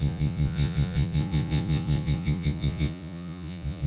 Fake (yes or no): yes